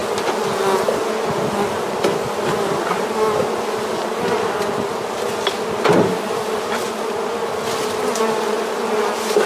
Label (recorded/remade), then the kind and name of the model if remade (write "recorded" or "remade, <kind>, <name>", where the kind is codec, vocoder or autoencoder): recorded